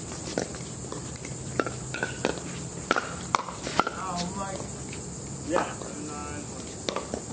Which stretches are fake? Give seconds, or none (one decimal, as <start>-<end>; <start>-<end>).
0.9-4.0